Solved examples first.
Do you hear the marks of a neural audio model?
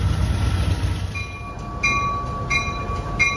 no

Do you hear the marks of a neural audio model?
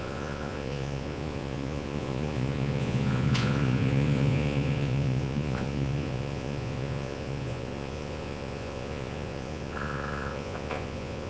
yes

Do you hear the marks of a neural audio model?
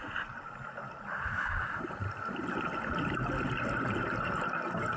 no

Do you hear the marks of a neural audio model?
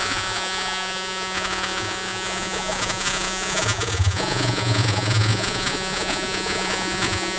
yes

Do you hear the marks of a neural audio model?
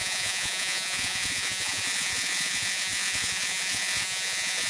yes